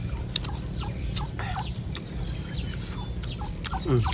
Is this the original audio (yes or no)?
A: yes